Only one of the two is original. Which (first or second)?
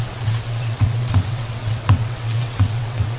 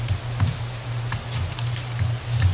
second